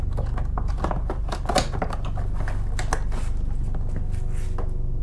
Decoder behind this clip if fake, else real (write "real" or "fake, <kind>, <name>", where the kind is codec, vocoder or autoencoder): real